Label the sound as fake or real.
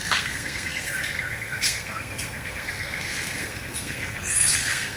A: fake